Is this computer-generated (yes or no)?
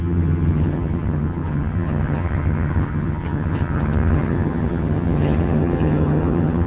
yes